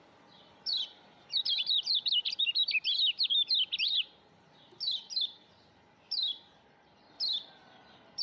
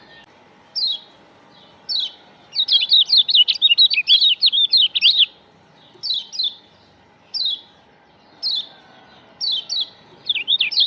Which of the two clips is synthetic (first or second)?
first